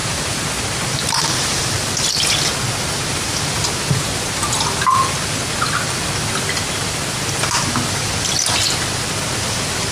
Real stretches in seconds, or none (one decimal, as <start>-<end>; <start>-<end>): 1.7-9.9